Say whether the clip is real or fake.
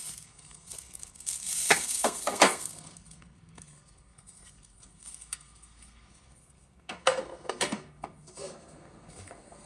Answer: fake